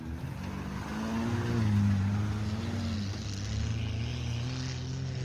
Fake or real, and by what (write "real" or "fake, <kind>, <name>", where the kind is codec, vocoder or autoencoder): real